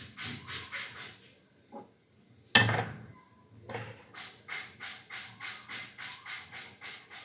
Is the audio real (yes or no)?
yes